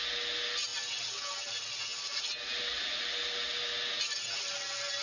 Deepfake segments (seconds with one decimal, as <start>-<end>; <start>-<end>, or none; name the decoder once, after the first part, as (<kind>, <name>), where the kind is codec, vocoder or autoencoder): none